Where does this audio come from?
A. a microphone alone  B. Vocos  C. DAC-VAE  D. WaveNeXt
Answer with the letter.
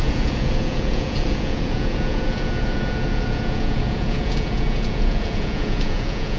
B